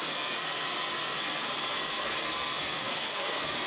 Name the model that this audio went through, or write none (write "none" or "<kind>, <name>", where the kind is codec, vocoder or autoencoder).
codec, SNAC